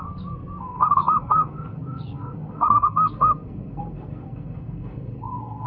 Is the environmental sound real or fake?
fake